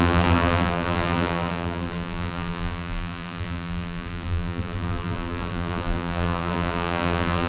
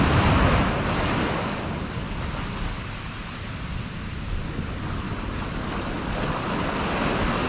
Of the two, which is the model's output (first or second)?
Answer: first